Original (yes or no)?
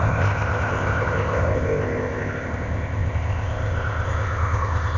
no